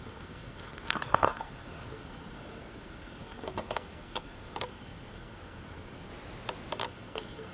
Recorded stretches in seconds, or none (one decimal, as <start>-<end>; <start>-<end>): 6.1-6.8